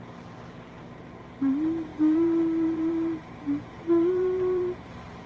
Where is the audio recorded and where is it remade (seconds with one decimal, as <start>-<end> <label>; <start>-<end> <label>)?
0.0-1.9 recorded; 1.9-5.3 remade